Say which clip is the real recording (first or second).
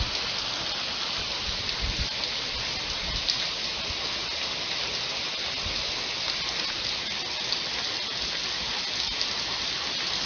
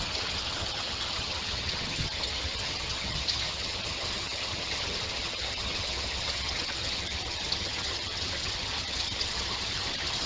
first